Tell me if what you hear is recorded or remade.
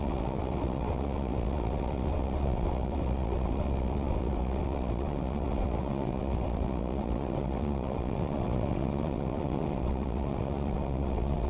remade